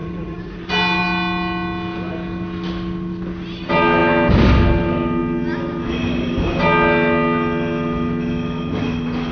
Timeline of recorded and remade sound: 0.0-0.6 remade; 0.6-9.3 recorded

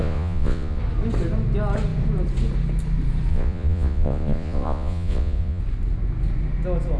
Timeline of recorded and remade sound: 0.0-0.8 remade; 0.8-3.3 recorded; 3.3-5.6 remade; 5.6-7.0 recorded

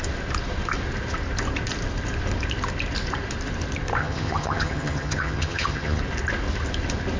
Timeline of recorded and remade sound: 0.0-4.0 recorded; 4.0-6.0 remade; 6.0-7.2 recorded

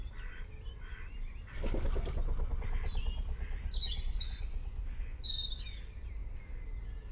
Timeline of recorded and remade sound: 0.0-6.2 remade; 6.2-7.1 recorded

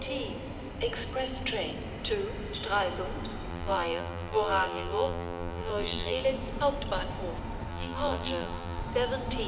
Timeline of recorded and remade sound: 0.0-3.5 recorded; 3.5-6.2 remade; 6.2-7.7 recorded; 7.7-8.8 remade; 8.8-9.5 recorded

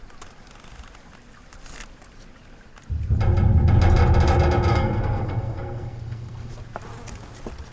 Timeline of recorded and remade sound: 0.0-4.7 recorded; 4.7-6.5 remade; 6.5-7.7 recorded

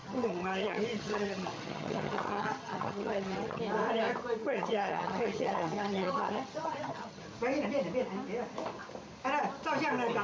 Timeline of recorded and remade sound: 0.0-3.6 remade; 3.6-4.4 recorded; 4.4-7.2 remade; 7.2-10.2 recorded